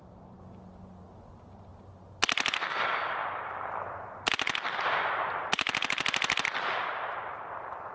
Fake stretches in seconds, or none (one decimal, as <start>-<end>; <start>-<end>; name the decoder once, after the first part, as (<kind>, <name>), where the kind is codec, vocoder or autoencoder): none